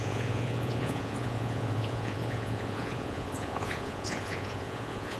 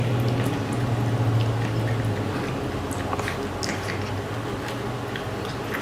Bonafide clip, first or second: second